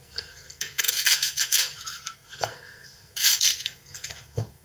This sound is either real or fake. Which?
fake